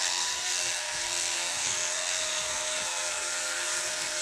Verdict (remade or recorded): remade